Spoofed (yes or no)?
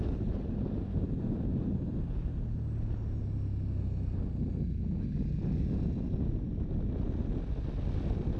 no